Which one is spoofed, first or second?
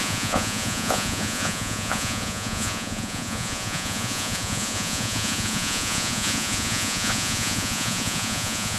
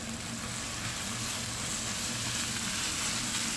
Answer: first